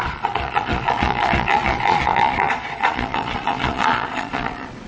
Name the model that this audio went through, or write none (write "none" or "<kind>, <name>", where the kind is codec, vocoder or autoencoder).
vocoder, Vocos